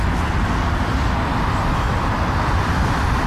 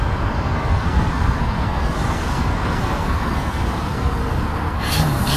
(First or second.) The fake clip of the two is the second